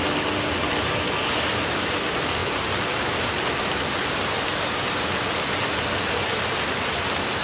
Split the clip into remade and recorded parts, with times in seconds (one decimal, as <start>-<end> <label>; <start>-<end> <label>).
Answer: 0.0-7.4 recorded